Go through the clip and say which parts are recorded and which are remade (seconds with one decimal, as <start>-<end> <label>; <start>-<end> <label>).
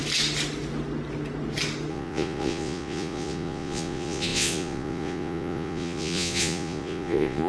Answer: 0.0-1.9 recorded; 1.9-7.5 remade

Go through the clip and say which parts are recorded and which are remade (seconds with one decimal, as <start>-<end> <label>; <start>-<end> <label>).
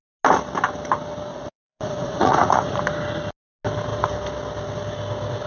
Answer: 0.0-1.3 recorded; 1.3-2.8 remade; 2.8-5.5 recorded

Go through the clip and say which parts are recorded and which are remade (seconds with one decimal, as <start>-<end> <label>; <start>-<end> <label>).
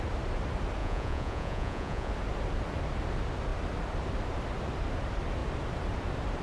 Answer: 0.0-0.8 recorded; 0.8-2.1 remade; 2.1-6.4 recorded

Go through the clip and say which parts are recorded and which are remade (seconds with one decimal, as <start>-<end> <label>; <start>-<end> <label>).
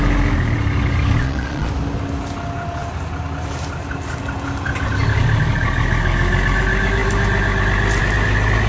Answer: 0.0-1.2 recorded; 1.2-1.7 remade; 1.7-8.7 recorded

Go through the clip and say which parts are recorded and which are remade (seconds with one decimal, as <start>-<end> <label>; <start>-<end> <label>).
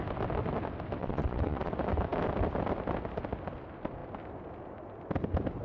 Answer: 0.0-1.0 recorded; 1.0-1.7 remade; 1.7-5.6 recorded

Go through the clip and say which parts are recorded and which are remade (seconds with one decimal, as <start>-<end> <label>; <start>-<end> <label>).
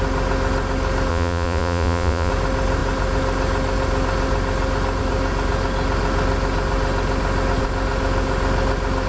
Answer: 0.0-1.1 recorded; 1.1-2.3 remade; 2.3-9.1 recorded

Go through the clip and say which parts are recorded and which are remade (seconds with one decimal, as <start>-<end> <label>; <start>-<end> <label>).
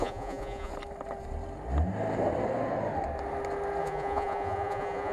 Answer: 0.0-0.7 remade; 0.7-3.8 recorded; 3.8-5.1 remade